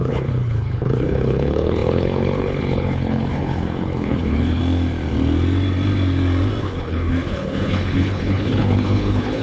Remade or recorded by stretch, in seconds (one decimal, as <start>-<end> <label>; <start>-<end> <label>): 0.0-4.6 remade; 4.6-6.6 recorded; 6.6-9.4 remade